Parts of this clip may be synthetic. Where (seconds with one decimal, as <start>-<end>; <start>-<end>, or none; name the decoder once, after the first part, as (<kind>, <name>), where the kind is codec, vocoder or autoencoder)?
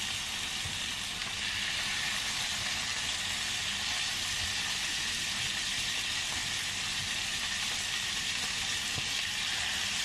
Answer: none